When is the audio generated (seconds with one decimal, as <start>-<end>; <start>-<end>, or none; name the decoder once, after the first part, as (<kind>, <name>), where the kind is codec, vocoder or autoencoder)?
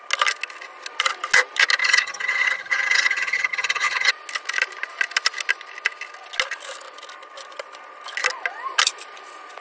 1.8-4.1 (vocoder, HiFi-GAN)